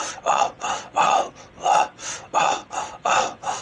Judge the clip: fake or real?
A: fake